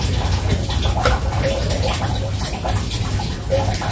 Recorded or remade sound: recorded